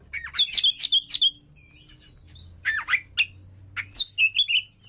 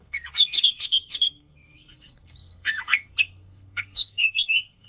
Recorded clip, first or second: first